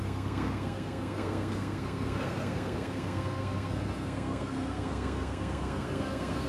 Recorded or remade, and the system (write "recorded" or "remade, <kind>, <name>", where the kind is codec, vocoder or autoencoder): remade, codec, SNAC